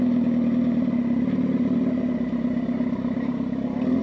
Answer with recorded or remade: recorded